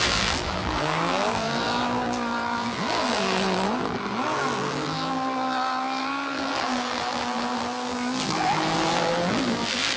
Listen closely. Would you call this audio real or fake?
fake